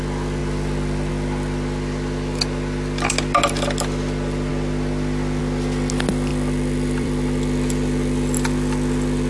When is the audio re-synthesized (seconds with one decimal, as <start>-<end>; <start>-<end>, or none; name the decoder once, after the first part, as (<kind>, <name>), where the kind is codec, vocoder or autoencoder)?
6.3-9.3 (vocoder, BigVGAN v2)